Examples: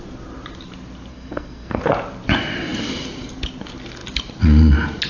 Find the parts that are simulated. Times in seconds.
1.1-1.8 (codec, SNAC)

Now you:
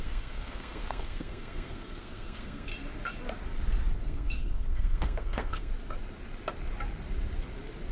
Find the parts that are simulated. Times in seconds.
0.0-2.7 (codec, SNAC); 4.0-5.7

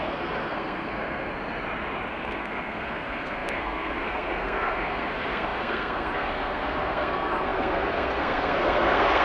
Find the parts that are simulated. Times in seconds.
0.0-1.3 (codec, SNAC); 2.1-9.2

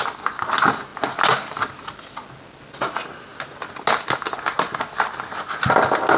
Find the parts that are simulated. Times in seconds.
none

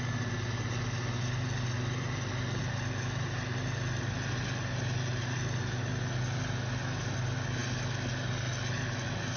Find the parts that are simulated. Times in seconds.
none

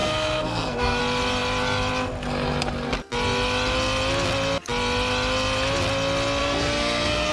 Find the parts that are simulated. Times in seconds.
0.0-1.0 (codec, SNAC); 6.4-7.3